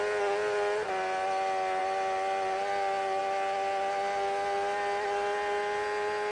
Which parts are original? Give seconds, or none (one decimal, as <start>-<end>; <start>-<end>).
0.0-6.3